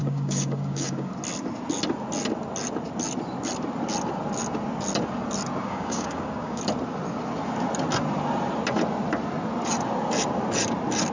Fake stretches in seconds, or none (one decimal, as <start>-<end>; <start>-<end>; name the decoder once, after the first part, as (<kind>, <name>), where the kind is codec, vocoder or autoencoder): 0.0-1.1 (codec, DAC); 5.6-6.6